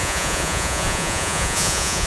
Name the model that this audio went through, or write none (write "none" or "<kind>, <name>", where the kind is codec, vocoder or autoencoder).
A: vocoder, Vocos